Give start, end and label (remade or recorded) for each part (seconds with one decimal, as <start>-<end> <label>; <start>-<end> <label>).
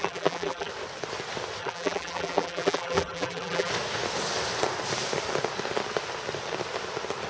0.0-0.7 remade; 0.7-1.6 recorded; 1.6-3.7 remade; 3.7-7.3 recorded